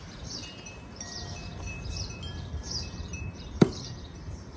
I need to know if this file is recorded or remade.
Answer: remade